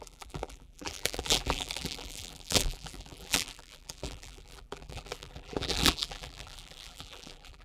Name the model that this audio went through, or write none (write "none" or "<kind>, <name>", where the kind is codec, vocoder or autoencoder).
vocoder, BigVGAN v2